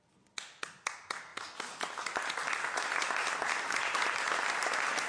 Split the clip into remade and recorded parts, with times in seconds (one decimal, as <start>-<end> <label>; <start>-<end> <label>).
0.0-5.1 recorded